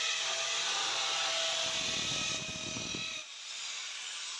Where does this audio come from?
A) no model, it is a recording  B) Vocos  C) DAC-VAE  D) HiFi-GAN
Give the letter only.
A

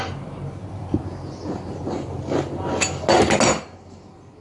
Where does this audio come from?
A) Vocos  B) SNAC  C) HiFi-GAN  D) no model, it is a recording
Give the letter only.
D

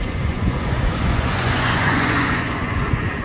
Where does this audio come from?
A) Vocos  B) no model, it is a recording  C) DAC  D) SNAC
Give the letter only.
A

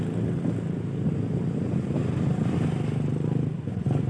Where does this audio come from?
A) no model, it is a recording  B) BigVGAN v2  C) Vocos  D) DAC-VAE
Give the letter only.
A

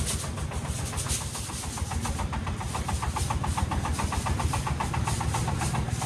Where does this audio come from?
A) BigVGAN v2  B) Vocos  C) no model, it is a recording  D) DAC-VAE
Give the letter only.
C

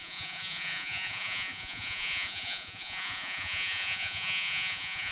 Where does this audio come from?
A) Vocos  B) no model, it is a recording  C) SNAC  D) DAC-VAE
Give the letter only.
A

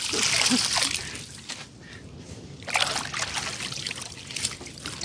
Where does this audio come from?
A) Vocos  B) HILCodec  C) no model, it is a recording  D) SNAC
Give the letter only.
C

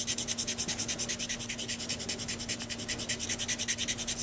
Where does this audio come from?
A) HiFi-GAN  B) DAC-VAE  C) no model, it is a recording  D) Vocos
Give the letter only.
C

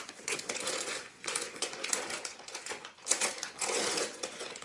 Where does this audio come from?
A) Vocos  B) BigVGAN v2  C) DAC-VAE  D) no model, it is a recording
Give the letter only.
A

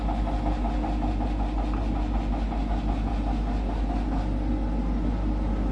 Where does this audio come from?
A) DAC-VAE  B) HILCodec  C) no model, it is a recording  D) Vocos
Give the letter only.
C